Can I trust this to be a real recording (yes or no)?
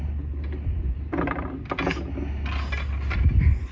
yes